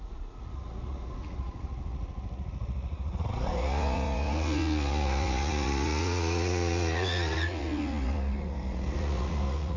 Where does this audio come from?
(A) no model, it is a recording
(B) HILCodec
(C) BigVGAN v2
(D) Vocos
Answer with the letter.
D